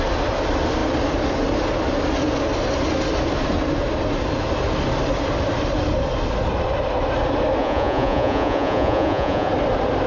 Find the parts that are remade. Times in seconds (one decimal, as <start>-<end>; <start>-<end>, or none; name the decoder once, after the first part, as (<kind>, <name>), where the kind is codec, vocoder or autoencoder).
7.6-9.5 (vocoder, Vocos)